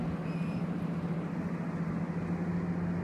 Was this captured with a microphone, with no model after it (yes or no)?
yes